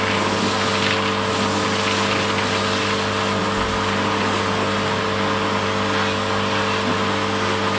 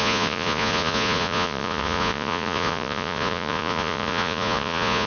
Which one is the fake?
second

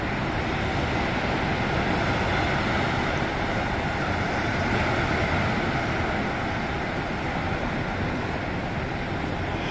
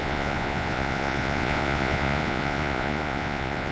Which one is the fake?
second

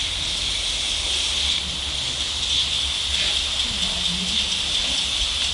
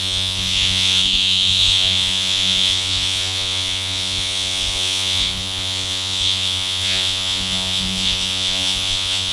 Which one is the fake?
second